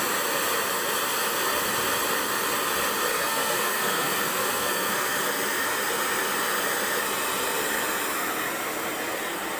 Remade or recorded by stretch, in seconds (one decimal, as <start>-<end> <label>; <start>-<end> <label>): 0.0-3.1 recorded; 3.1-5.3 remade; 5.3-9.6 recorded